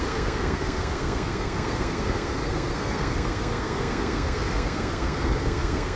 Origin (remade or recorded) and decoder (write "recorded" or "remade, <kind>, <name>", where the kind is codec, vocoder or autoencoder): remade, codec, SNAC